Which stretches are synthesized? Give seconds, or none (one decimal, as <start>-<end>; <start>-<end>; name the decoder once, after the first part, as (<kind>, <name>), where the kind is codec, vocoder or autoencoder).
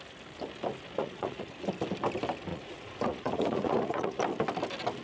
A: 1.0-1.7 (vocoder, Vocos); 2.5-4.2